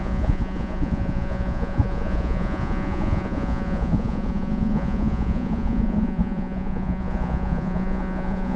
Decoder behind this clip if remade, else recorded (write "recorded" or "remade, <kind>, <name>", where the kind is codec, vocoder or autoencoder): remade, vocoder, Vocos